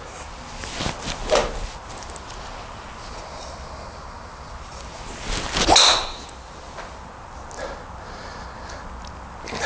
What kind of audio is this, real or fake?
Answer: real